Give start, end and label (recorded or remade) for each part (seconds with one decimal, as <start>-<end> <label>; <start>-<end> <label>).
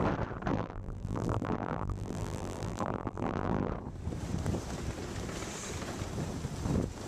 0.0-0.5 recorded; 0.5-3.7 remade; 3.7-7.1 recorded